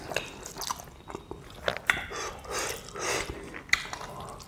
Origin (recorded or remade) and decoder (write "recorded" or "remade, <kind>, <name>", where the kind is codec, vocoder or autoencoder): recorded